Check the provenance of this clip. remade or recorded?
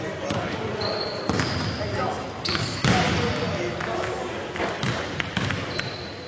recorded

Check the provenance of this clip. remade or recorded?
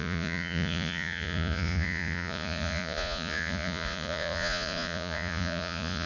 remade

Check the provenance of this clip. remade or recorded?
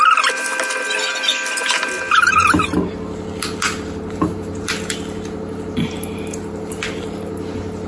recorded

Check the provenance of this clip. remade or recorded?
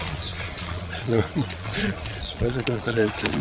remade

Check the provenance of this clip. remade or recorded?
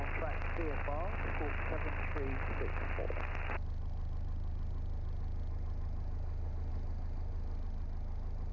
recorded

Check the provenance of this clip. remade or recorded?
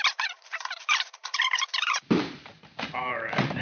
remade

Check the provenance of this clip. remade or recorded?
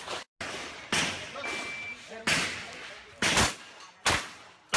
recorded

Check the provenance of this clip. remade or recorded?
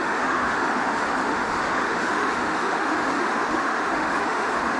remade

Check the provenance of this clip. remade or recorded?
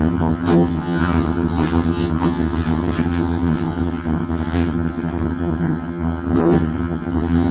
remade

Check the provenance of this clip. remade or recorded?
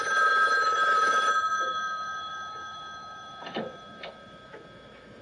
remade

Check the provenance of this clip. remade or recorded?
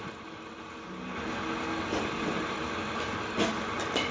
recorded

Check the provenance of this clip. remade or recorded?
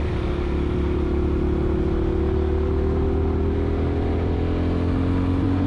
recorded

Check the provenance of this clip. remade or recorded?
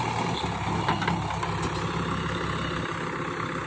recorded